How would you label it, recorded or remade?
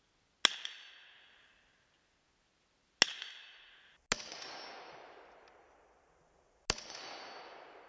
recorded